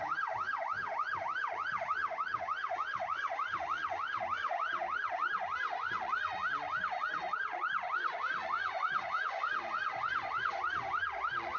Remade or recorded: remade